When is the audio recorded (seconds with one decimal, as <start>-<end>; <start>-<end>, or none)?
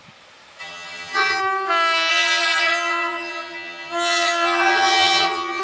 0.0-0.6; 1.4-2.1